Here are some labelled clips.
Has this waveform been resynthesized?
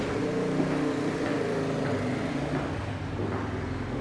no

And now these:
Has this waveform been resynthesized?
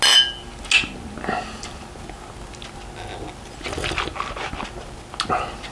no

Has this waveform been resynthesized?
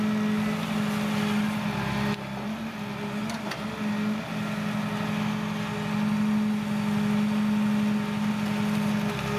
no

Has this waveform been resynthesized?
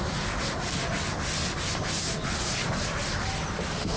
no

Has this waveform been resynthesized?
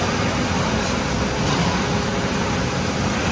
no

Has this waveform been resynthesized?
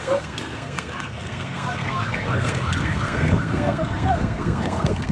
yes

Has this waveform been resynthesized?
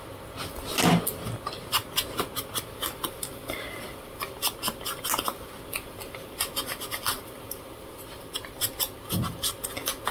no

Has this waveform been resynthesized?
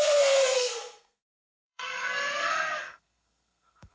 yes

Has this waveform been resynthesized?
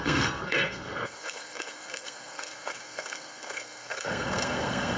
yes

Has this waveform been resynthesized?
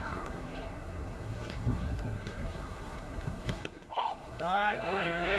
yes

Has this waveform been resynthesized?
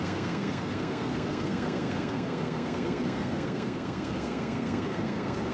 yes